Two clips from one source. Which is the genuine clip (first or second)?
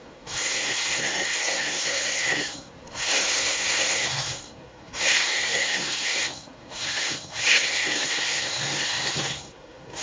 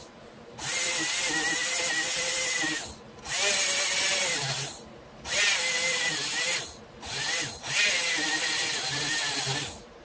second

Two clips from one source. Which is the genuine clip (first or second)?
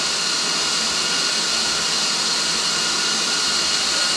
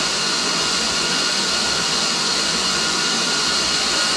first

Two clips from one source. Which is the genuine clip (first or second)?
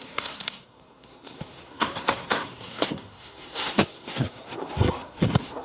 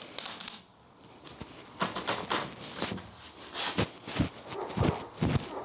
second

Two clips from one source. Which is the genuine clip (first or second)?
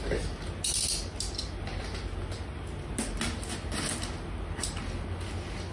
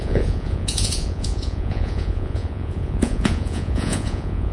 first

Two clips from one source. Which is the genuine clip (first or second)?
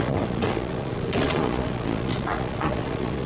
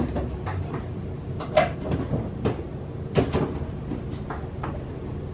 second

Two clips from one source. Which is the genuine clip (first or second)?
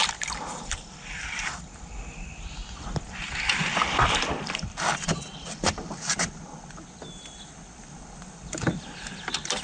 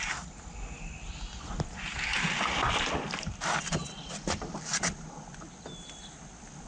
second